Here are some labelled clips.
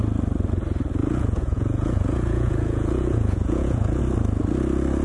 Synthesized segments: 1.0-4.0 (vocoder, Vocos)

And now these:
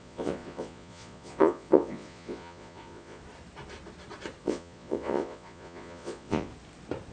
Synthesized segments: 0.0-3.2 (vocoder, Vocos); 4.4-6.5